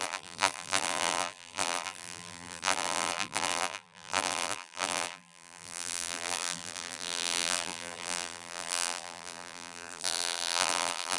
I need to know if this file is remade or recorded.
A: remade